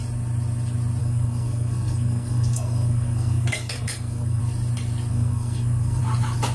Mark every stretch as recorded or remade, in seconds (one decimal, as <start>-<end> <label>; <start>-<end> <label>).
0.0-1.0 recorded; 1.0-4.4 remade; 4.4-5.1 recorded; 5.1-6.0 remade; 6.0-6.5 recorded

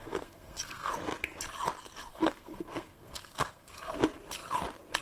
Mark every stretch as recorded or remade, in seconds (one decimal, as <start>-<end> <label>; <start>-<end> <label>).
0.0-0.9 remade; 0.9-2.1 recorded; 2.1-4.0 remade; 4.0-5.0 recorded

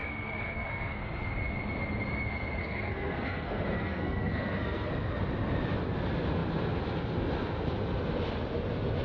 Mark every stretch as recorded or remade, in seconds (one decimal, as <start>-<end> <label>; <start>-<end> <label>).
0.0-1.0 remade; 1.0-2.6 recorded; 2.6-4.9 remade; 4.9-9.0 recorded

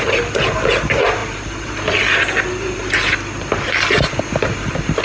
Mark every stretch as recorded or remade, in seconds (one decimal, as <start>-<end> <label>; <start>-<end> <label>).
0.0-5.0 recorded

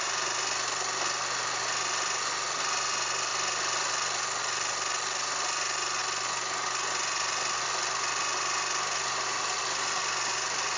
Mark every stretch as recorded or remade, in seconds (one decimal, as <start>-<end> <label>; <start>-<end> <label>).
0.0-10.8 recorded

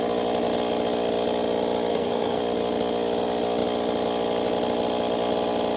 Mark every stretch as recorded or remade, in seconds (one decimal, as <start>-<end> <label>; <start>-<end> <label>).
0.0-1.9 recorded; 1.9-2.4 remade; 2.4-5.8 recorded